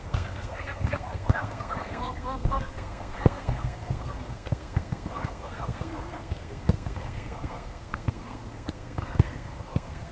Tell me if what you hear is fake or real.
fake